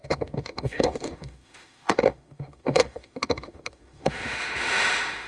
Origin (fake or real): fake